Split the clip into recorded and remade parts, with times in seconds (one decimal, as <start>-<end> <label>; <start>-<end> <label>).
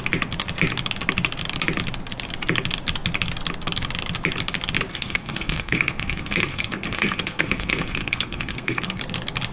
0.0-4.9 recorded; 4.9-9.0 remade; 9.0-9.5 recorded